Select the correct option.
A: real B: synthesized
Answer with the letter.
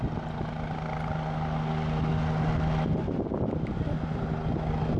A